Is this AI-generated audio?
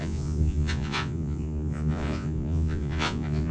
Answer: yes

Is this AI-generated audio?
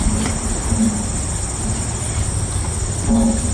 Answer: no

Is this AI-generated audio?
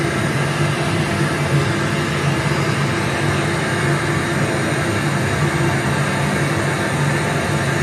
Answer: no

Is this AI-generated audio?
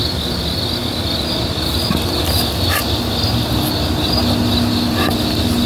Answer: no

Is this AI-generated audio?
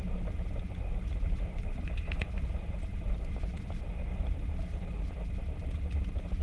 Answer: no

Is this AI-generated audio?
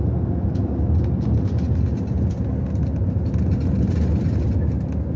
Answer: no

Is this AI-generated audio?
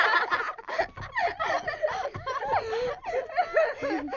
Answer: no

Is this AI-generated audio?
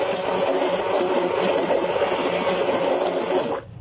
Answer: no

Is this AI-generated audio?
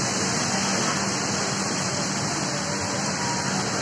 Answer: no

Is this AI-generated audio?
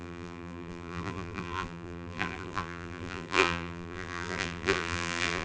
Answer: yes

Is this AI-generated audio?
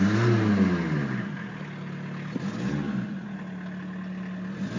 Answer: no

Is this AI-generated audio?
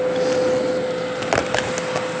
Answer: no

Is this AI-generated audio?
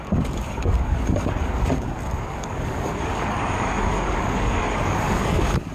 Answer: yes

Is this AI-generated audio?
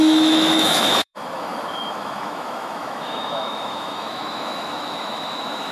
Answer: yes